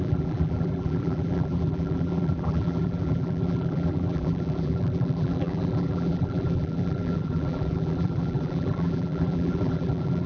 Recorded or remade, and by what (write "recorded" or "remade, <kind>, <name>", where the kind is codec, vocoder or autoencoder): remade, vocoder, BigVGAN v2